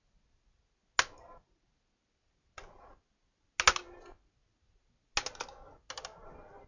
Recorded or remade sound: recorded